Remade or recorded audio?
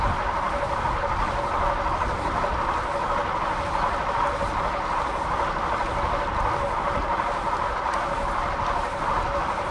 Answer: recorded